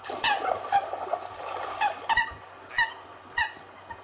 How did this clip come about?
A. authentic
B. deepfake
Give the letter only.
A